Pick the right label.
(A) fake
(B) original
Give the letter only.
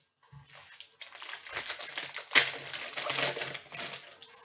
B